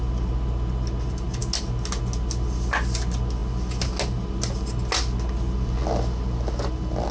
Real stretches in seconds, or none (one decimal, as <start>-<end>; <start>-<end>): 0.0-7.1